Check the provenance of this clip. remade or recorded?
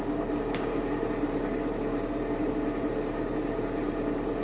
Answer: remade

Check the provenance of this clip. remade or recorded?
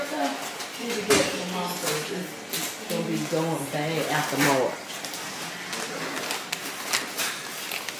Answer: recorded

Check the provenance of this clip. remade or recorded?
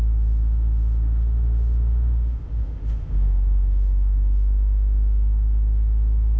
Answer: remade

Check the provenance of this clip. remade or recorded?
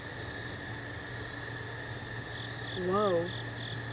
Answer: recorded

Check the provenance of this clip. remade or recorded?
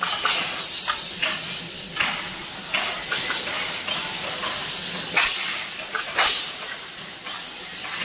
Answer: recorded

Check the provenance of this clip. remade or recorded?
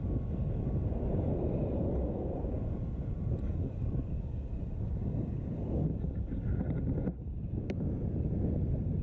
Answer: recorded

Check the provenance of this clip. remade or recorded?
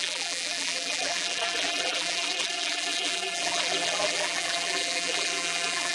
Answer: remade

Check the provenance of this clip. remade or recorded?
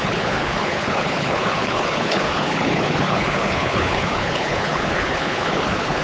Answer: remade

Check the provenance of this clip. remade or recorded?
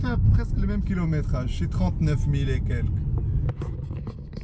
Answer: recorded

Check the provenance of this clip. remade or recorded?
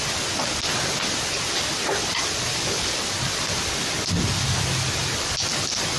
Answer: recorded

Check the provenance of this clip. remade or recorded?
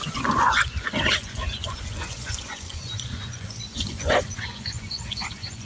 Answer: remade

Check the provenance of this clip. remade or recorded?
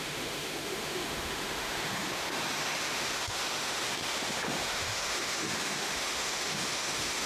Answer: remade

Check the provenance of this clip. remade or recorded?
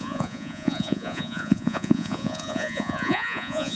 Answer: remade